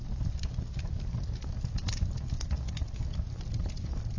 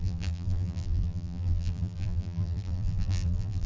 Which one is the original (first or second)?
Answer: first